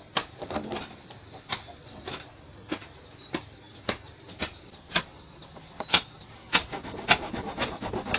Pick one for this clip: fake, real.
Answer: fake